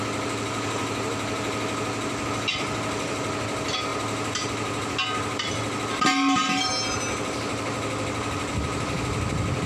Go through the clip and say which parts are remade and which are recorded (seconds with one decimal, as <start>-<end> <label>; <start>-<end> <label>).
0.0-9.7 recorded